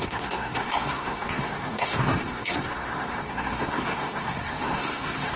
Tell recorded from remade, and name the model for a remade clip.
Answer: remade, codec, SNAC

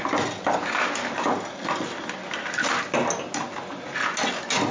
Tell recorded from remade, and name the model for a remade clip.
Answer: recorded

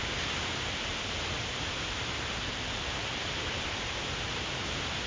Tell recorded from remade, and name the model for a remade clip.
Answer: remade, vocoder, BigVGAN v2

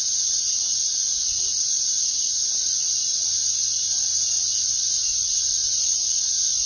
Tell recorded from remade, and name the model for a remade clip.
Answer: recorded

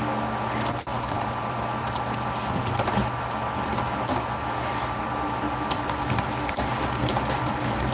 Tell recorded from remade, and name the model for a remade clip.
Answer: recorded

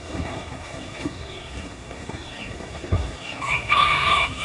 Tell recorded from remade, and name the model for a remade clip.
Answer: remade, codec, SNAC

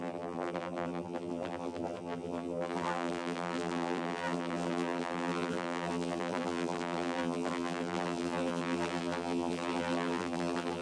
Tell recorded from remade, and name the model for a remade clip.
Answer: remade, vocoder, BigVGAN v2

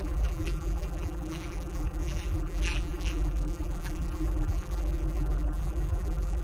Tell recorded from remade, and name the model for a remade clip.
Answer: remade, vocoder, BigVGAN v2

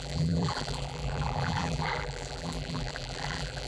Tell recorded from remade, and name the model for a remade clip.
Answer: remade, vocoder, BigVGAN v2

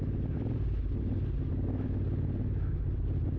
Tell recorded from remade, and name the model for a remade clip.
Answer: recorded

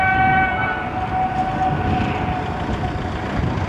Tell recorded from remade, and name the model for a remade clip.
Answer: recorded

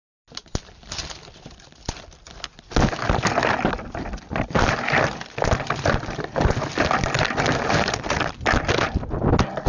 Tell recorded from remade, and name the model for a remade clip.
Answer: recorded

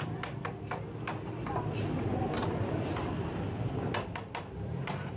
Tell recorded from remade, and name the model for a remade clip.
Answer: recorded